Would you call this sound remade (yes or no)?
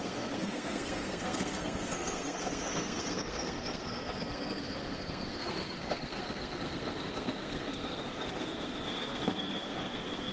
yes